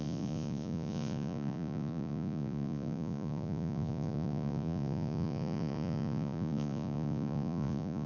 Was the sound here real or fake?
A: fake